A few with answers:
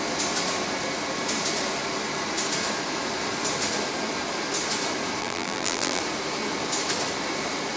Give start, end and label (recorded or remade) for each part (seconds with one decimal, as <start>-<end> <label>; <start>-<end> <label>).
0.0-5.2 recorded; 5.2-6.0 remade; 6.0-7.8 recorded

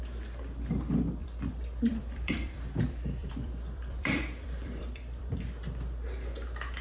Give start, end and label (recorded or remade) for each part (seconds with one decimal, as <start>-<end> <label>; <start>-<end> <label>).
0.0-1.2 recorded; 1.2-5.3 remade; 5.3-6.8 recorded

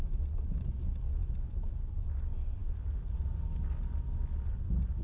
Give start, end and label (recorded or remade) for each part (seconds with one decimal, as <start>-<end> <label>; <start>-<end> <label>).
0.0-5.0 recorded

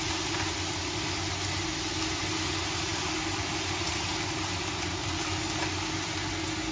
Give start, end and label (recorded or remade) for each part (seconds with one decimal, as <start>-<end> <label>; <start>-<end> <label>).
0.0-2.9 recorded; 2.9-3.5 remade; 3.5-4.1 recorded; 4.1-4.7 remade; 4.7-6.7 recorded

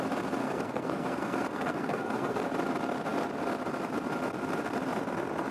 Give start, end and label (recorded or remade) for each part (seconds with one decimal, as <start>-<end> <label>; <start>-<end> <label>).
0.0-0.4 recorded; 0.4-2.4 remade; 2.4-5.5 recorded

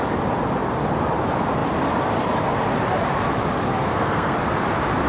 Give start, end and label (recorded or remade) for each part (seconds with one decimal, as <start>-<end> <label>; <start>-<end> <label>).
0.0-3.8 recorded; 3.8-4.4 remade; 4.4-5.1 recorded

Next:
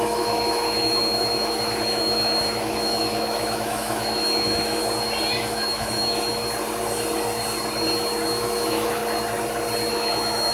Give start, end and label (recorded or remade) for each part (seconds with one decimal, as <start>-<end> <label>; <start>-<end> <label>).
0.0-4.8 remade; 4.8-5.4 recorded; 5.4-6.4 remade; 6.4-8.3 recorded; 8.3-9.0 remade; 9.0-9.9 recorded; 9.9-10.5 remade

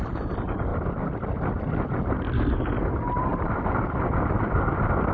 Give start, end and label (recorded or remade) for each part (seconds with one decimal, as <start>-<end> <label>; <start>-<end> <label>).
0.0-3.3 recorded; 3.3-3.8 remade; 3.8-5.1 recorded